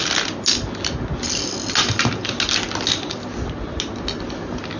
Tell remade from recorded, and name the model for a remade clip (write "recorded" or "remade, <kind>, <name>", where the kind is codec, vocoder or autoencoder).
recorded